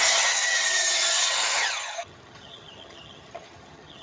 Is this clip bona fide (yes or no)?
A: no